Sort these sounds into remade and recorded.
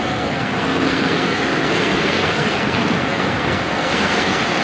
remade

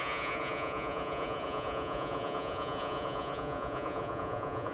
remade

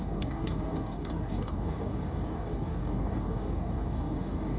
remade